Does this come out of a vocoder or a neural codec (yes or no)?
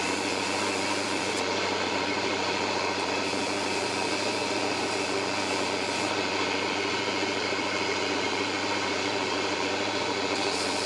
yes